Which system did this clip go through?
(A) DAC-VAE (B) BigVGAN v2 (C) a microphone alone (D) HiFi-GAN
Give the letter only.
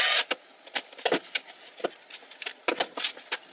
C